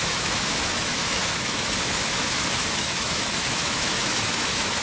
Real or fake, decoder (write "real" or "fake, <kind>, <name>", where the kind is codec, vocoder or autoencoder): fake, autoencoder, DAC-VAE